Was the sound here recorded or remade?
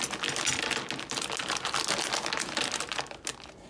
recorded